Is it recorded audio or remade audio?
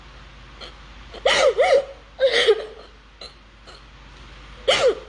recorded